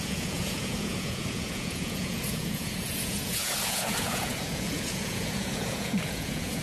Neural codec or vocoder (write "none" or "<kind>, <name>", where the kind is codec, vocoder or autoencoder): vocoder, Vocos